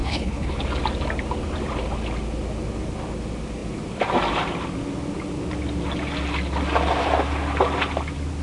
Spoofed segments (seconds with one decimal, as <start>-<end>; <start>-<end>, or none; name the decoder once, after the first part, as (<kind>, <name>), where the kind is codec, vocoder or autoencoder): 0.0-0.6 (codec, HILCodec)

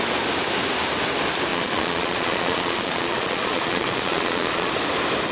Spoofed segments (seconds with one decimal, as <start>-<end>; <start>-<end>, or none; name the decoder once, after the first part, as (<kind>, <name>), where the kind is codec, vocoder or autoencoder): 1.5-4.7 (vocoder, Vocos)

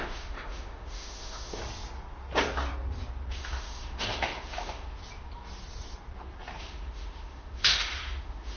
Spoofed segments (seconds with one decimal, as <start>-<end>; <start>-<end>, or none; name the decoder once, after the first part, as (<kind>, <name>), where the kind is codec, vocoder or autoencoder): 0.0-1.6 (autoencoder, DAC-VAE); 3.3-5.0; 6.6-8.6

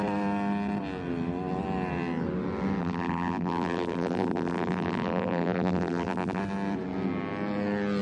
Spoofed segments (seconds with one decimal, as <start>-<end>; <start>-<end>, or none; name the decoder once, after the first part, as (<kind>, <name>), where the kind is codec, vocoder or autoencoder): 2.8-6.4 (vocoder, BigVGAN v2)

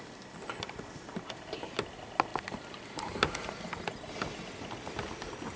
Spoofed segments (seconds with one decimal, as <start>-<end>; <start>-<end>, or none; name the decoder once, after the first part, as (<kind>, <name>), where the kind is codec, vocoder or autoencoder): none

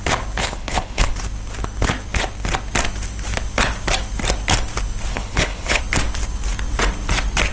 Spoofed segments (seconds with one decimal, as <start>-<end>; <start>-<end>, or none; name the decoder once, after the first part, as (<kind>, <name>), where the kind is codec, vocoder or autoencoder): 0.4-1.1 (codec, HILCodec); 5.1-5.8